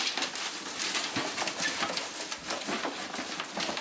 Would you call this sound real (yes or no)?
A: yes